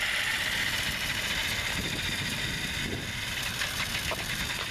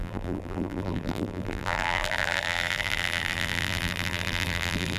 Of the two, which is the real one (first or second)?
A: first